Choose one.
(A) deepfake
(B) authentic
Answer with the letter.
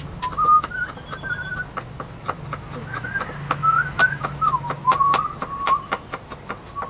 B